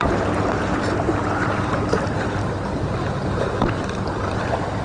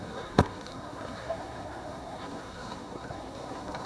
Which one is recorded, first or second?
first